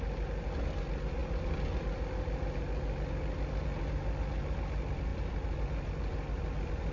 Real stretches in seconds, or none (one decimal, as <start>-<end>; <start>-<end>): 0.0-6.9

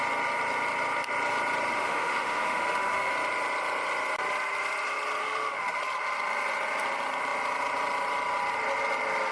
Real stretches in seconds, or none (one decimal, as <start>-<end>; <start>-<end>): 0.0-1.7; 3.1-5.2; 5.8-9.3